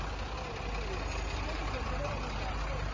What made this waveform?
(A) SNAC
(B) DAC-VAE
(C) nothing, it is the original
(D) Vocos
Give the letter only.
C